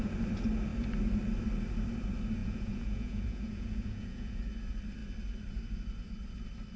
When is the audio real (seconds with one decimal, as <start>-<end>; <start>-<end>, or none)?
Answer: 0.0-2.4; 4.4-6.8